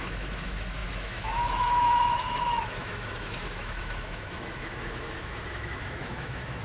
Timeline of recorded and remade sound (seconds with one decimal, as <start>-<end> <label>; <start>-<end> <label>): 0.0-6.6 remade